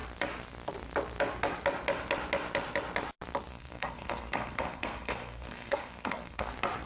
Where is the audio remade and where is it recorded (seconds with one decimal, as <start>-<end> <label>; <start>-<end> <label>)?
0.0-3.5 recorded; 3.5-6.5 remade; 6.5-6.9 recorded